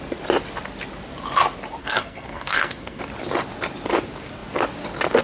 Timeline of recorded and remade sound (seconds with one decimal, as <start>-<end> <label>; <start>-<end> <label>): 0.0-1.8 recorded; 1.8-3.0 remade; 3.0-5.2 recorded